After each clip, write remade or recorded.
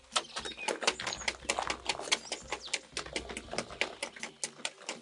recorded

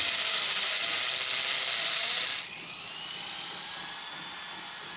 recorded